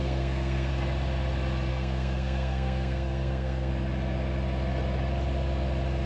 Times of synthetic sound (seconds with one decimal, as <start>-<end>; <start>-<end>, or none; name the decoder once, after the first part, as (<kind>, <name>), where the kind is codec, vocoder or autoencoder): 0.0-0.7 (codec, SNAC); 1.7-3.7